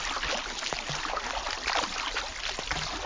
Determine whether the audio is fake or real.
real